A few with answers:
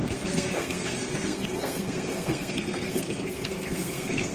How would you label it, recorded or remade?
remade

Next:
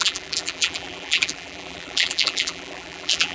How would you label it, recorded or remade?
remade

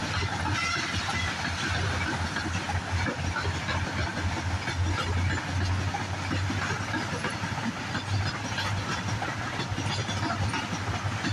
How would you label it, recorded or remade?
recorded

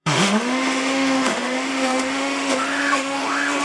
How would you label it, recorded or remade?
remade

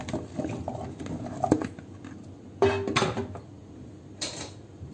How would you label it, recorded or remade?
recorded